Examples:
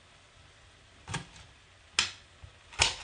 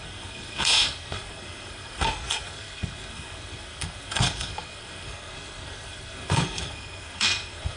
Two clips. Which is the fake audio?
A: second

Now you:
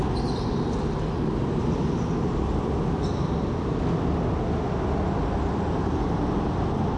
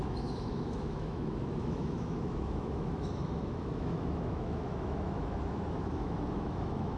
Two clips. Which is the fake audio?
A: second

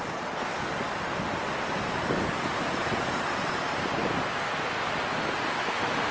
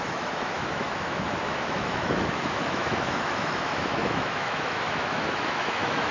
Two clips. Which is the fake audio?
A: second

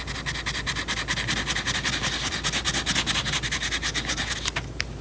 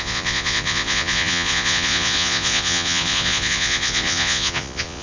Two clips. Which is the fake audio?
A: second